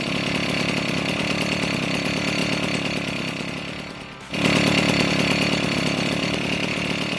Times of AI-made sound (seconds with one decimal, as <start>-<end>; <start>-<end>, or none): none